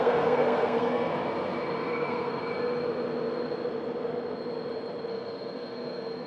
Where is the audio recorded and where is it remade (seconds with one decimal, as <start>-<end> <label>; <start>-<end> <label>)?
0.0-1.1 remade; 1.1-1.8 recorded; 1.8-2.4 remade; 2.4-5.1 recorded; 5.1-6.3 remade